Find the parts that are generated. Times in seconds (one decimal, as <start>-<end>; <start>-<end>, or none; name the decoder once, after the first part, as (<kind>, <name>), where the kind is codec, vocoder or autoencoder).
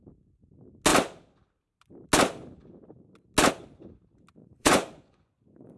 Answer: 4.4-5.8 (vocoder, Vocos)